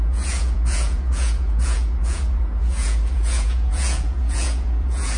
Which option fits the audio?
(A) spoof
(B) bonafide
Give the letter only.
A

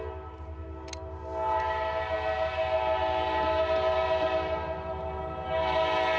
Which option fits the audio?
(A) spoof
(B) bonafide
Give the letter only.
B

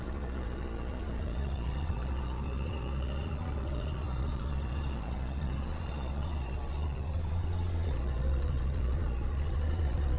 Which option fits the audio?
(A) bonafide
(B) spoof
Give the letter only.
B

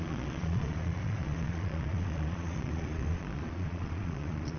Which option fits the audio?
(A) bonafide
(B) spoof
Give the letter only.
B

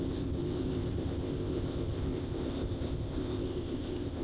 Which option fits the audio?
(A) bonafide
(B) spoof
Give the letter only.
B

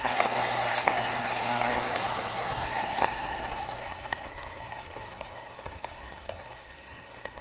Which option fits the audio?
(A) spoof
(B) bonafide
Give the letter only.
A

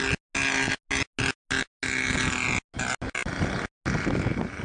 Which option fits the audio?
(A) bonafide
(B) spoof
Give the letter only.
A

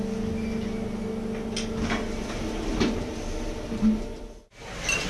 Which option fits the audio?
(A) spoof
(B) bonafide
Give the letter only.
B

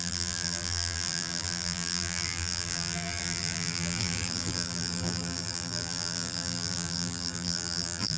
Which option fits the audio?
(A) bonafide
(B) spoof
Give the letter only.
B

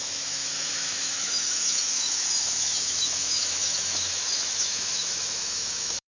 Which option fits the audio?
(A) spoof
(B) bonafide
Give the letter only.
A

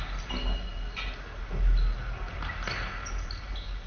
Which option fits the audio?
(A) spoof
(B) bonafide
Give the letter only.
B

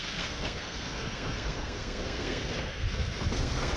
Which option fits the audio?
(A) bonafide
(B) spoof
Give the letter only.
B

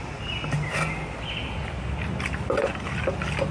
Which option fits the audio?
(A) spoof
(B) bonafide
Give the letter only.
B